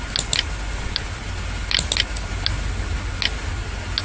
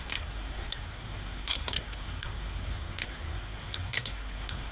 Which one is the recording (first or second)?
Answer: first